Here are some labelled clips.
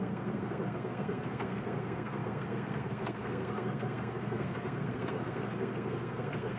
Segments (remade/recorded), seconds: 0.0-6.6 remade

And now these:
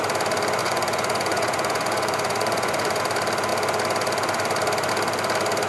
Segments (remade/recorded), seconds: 0.0-0.6 recorded; 0.6-3.0 remade; 3.0-5.7 recorded

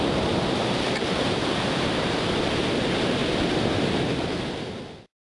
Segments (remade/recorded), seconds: 0.0-0.6 recorded; 0.6-2.2 remade; 2.2-5.4 recorded

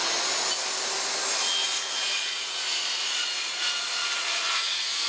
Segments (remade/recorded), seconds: 0.0-1.6 recorded; 1.6-5.1 remade

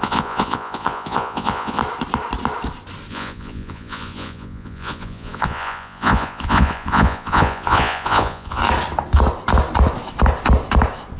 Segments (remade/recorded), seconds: 0.0-1.8 remade; 1.8-3.1 recorded; 3.1-8.6 remade; 8.6-11.2 recorded

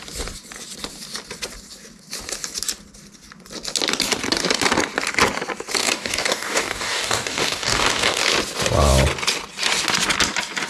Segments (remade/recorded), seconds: 0.0-5.8 recorded; 5.8-8.2 remade; 8.2-10.7 recorded

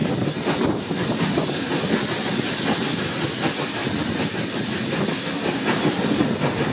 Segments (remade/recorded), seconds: 0.0-6.7 recorded

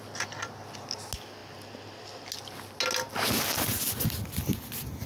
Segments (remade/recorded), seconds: 0.0-5.1 recorded